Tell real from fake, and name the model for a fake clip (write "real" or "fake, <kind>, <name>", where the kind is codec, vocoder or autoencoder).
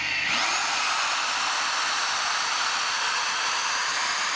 real